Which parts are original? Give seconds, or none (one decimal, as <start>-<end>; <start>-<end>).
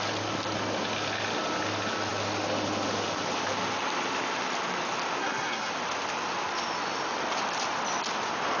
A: 0.0-5.2; 5.7-8.6